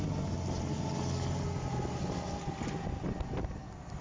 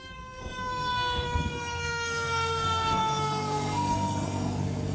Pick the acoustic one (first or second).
first